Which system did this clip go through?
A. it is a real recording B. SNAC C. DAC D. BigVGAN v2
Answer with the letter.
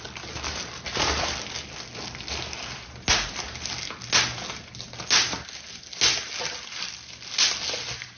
A